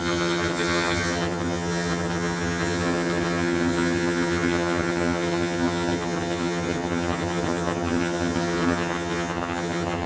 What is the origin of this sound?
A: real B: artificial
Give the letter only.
B